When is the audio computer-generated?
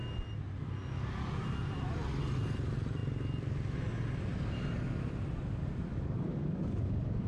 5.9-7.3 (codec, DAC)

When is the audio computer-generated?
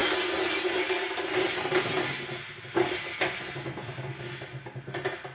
none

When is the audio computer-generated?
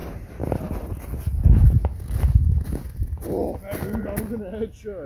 none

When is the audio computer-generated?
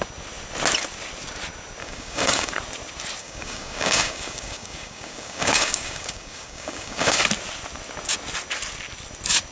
1.8-2.5 (codec, DAC); 3.2-7.2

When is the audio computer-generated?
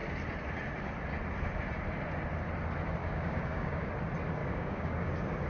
3.0-3.9 (codec, DAC); 4.4-5.1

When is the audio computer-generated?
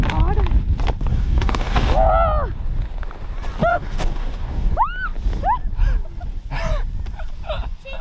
1.1-1.9 (codec, DAC); 3.7-4.7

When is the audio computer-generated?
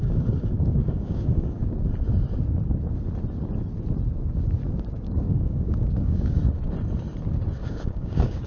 0.0-1.6 (codec, DAC); 4.9-6.4; 7.7-8.5